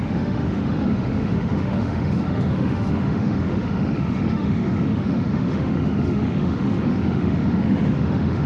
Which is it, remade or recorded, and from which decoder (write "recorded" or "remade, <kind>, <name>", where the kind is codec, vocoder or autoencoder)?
remade, autoencoder, DAC-VAE